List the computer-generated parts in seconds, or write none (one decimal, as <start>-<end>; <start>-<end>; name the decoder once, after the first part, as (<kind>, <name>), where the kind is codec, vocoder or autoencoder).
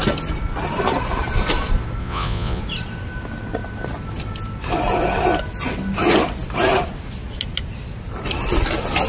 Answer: 2.0-2.6 (vocoder, Vocos)